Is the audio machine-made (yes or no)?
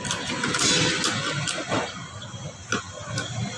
no